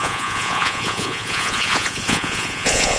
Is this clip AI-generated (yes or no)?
yes